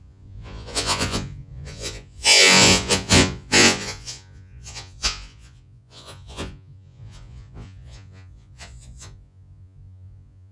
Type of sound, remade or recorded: remade